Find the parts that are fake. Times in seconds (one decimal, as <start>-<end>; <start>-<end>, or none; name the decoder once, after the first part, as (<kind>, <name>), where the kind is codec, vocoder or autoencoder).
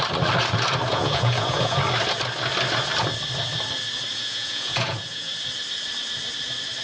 0.9-1.8 (vocoder, Vocos); 4.1-5.3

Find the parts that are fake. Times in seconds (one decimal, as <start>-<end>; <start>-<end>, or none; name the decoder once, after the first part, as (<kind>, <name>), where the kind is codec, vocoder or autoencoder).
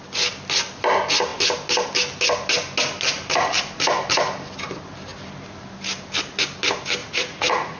7.0-7.8 (vocoder, Vocos)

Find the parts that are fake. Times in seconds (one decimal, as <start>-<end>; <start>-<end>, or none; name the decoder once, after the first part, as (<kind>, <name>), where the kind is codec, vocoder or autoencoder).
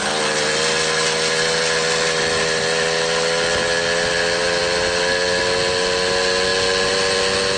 none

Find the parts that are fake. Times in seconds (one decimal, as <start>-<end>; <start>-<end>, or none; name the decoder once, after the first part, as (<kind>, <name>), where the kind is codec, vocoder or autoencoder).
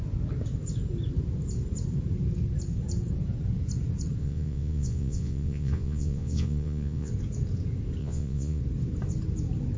4.2-7.1 (vocoder, Vocos); 8.0-8.6